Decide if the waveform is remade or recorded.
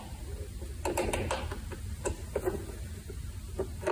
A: recorded